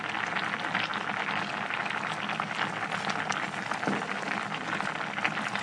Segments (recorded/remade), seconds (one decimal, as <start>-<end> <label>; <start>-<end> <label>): 0.0-5.6 recorded